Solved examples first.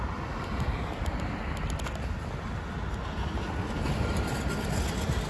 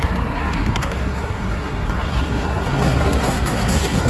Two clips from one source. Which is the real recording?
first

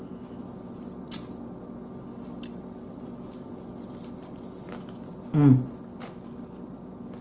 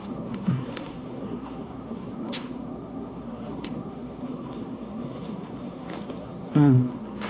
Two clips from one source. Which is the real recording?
first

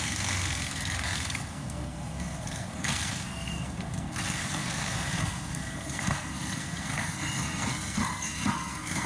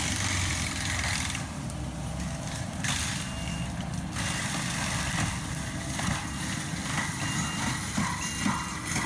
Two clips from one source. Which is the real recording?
second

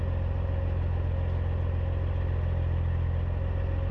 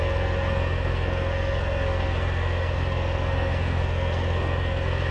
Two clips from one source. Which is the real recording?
first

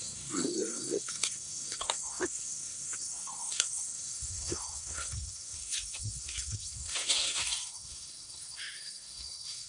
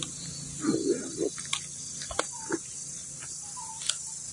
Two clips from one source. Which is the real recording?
second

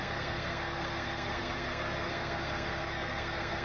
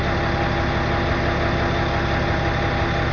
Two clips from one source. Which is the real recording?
second